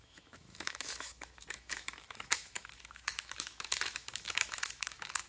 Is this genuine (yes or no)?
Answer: no